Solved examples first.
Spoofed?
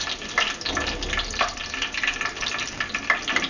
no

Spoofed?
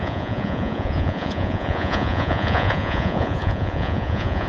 yes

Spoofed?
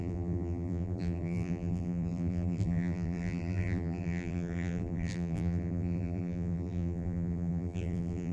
yes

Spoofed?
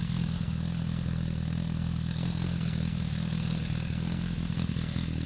yes